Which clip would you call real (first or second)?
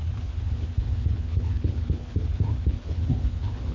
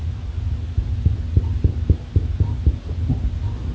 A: second